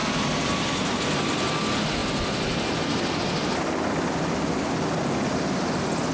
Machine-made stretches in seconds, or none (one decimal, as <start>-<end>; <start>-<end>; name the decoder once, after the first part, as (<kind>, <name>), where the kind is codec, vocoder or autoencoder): none